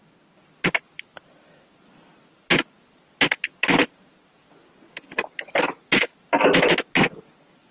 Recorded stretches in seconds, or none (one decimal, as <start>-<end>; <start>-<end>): 0.0-7.7